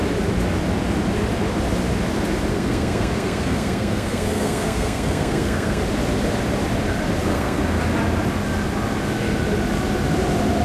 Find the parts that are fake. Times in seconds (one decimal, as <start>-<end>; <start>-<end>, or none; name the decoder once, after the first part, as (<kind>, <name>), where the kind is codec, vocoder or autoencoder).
2.5-5.8 (codec, SNAC); 7.3-7.8